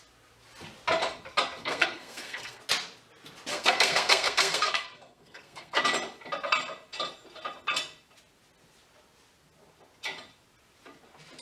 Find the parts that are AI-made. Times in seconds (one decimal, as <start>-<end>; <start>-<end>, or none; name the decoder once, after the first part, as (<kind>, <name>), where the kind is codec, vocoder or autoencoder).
1.6-2.6 (codec, SNAC); 3.5-5.8